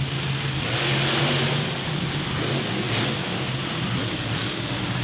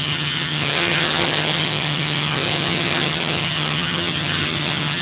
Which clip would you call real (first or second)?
first